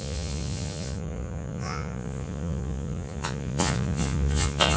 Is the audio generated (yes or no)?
yes